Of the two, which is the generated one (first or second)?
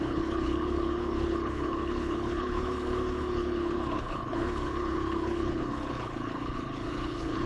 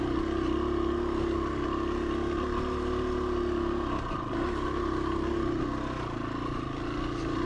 first